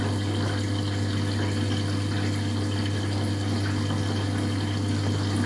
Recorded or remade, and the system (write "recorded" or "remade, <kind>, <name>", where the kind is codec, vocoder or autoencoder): recorded